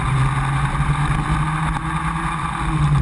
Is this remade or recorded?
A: recorded